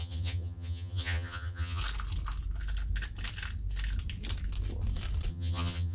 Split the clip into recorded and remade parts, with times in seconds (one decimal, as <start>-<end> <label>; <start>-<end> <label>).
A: 0.0-1.8 remade; 1.8-5.3 recorded; 5.3-5.9 remade